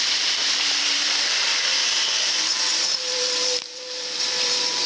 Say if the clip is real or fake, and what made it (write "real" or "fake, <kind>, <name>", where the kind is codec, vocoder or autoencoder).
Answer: fake, vocoder, BigVGAN v2